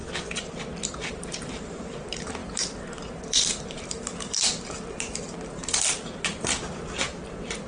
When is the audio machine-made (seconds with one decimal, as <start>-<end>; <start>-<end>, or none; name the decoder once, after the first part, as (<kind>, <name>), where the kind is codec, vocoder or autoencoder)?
1.1-7.7 (vocoder, BigVGAN v2)